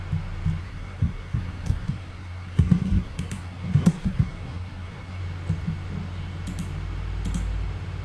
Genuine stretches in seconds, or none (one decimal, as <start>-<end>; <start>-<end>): 0.0-0.6; 5.2-8.0